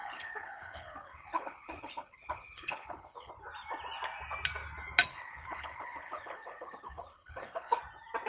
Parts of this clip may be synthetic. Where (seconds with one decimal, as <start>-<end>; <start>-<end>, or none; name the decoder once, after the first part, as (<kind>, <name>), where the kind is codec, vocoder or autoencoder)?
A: 0.0-3.3 (codec, HILCodec); 5.1-7.8